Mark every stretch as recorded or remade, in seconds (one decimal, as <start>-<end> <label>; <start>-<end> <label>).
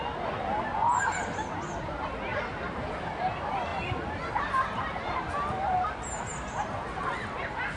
0.0-2.3 recorded; 2.3-2.9 remade; 2.9-7.8 recorded